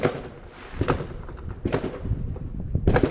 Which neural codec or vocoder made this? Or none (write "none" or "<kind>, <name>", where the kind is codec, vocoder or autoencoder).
none